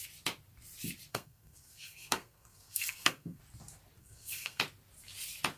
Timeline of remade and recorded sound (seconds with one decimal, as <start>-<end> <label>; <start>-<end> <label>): 0.0-1.1 recorded; 1.1-3.4 remade; 3.4-4.0 recorded; 4.0-4.6 remade; 4.6-5.6 recorded